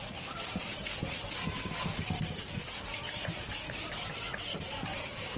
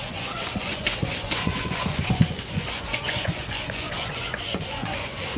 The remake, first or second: second